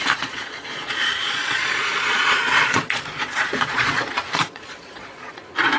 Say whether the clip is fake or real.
fake